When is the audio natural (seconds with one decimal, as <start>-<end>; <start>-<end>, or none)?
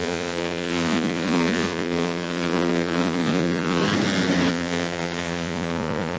3.8-4.5